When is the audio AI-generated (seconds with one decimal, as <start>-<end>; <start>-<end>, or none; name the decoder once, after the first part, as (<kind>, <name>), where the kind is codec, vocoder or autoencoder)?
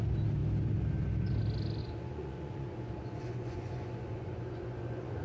1.8-5.2 (vocoder, Vocos)